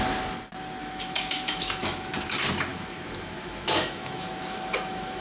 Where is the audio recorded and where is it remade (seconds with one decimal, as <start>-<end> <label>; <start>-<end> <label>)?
0.0-0.8 recorded; 0.8-2.1 remade; 2.1-2.7 recorded; 2.7-5.2 remade